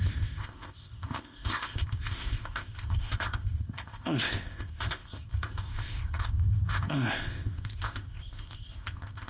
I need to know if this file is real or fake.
fake